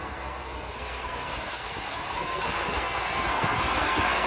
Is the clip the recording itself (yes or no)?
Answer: no